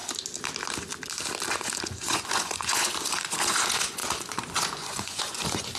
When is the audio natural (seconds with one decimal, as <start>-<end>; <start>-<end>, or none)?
0.0-1.5